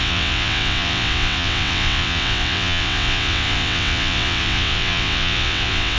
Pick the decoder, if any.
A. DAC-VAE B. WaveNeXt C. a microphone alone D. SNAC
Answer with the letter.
B